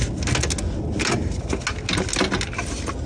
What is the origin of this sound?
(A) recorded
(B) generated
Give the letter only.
A